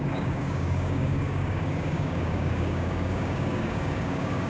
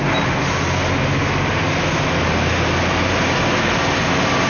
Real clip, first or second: second